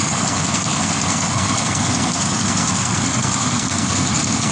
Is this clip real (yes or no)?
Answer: no